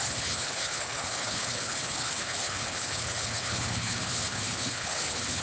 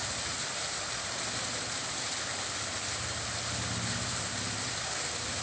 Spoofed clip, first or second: first